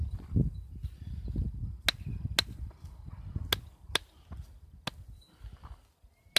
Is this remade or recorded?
recorded